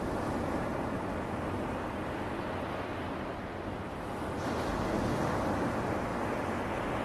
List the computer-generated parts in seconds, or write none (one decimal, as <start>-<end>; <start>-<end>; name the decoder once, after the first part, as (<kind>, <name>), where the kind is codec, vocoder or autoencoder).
none